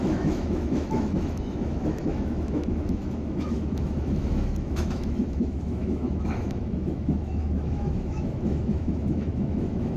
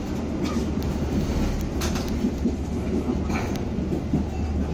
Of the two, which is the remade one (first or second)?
first